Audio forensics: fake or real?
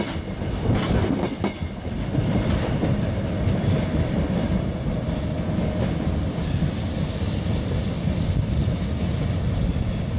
real